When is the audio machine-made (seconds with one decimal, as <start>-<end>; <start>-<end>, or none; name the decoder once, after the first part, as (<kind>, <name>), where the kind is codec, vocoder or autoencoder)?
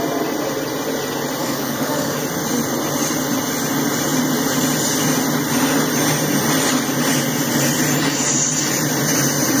1.4-2.2 (codec, DAC)